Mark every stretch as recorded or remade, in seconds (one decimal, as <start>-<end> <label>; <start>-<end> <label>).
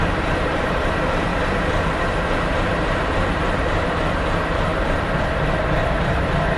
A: 0.0-6.6 remade